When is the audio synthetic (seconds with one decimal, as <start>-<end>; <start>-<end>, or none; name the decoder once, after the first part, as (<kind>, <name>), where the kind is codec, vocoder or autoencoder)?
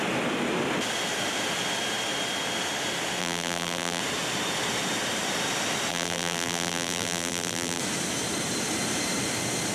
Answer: 3.2-4.0 (vocoder, BigVGAN v2); 5.9-7.8